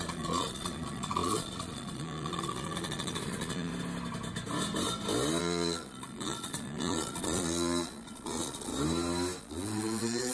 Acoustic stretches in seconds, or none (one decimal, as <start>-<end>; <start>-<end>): 3.7-5.4; 8.7-9.4